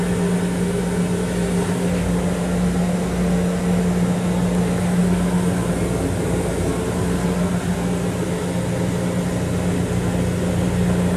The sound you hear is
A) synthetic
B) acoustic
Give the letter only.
B